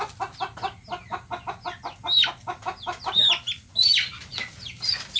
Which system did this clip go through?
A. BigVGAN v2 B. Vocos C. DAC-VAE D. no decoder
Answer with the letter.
D